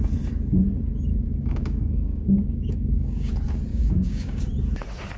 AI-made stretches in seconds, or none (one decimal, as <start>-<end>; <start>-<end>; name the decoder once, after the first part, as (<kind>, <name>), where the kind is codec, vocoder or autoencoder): 1.1-3.3 (codec, DAC); 3.7-4.4